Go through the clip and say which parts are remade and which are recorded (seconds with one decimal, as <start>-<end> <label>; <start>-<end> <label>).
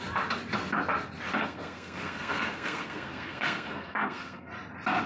0.0-1.4 recorded; 1.4-4.5 remade; 4.5-5.1 recorded